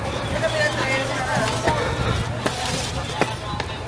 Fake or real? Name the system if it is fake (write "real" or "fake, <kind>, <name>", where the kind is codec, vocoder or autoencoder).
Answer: real